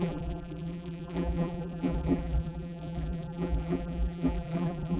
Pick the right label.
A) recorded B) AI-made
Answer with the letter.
B